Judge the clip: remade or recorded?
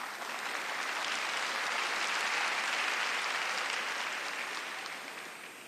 recorded